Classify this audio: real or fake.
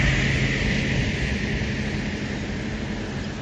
real